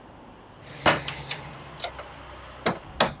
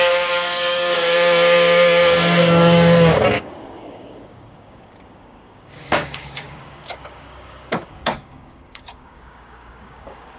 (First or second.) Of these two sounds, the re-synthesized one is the second